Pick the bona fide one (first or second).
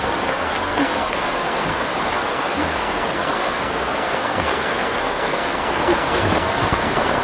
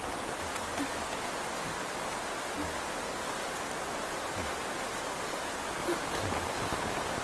second